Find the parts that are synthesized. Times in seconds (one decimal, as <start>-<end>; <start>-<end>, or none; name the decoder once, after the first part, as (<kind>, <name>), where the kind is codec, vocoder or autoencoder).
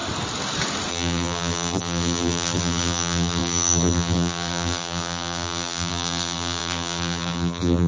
0.9-7.9 (vocoder, BigVGAN v2)